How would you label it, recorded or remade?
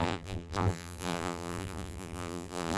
remade